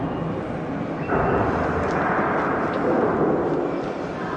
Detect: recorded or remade recorded